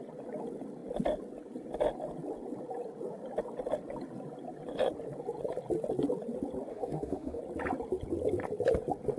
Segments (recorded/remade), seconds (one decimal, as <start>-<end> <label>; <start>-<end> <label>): 0.0-6.7 recorded; 6.7-7.4 remade; 7.4-9.2 recorded